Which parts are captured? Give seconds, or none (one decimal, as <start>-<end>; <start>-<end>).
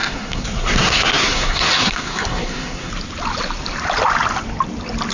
2.9-5.1